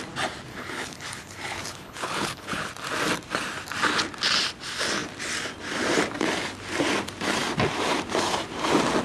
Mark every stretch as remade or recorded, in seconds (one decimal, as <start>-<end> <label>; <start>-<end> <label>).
0.0-0.5 recorded; 0.5-2.7 remade; 2.7-9.0 recorded